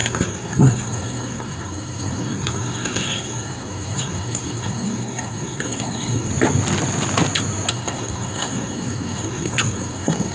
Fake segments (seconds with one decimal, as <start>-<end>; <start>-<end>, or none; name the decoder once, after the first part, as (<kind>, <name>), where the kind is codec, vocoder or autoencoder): 0.0-6.3 (codec, SNAC); 7.7-10.3